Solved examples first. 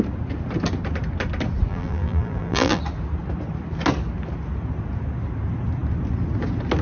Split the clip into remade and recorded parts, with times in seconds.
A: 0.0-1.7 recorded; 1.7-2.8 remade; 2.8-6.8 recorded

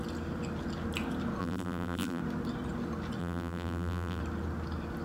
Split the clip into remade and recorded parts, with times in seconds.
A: 0.0-1.4 recorded; 1.4-2.2 remade; 2.2-3.2 recorded; 3.2-4.2 remade; 4.2-5.0 recorded

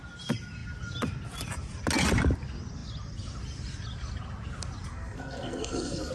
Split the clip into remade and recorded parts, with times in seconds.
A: 0.0-4.9 recorded; 4.9-6.1 remade

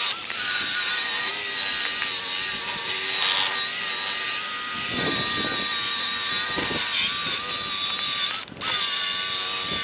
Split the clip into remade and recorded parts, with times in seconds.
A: 0.0-9.8 recorded

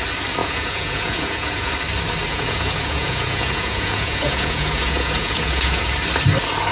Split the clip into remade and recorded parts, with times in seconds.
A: 0.0-0.4 recorded; 0.4-1.7 remade; 1.7-2.3 recorded; 2.3-5.9 remade; 5.9-6.7 recorded

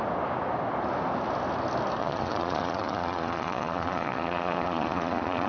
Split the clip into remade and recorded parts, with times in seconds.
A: 0.0-2.0 recorded; 2.0-5.5 remade

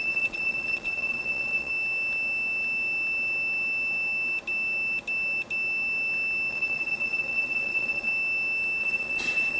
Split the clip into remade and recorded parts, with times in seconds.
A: 0.0-1.7 remade; 1.7-6.5 recorded; 6.5-8.1 remade; 8.1-8.8 recorded; 8.8-9.6 remade

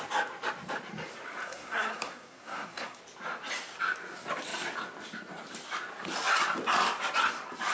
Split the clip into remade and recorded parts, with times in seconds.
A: 0.0-1.4 recorded; 1.4-3.0 remade; 3.0-7.7 recorded